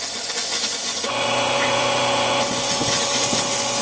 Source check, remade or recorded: remade